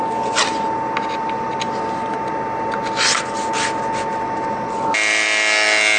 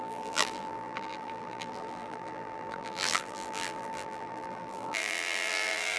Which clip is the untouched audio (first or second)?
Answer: first